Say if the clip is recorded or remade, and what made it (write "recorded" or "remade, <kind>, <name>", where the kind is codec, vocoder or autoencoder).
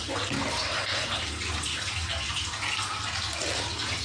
recorded